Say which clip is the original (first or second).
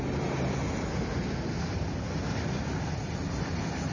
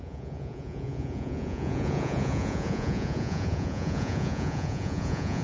first